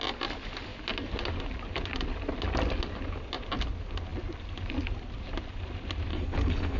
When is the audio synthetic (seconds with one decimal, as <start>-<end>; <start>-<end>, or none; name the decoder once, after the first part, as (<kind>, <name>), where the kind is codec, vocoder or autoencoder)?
6.1-6.8 (codec, HILCodec)